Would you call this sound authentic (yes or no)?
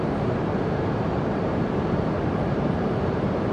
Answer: no